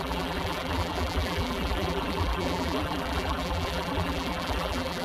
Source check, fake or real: fake